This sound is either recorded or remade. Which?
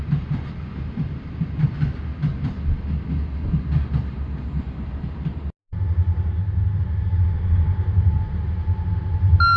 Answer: recorded